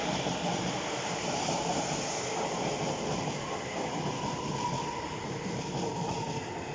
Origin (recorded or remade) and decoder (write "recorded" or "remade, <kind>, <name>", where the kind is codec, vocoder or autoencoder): recorded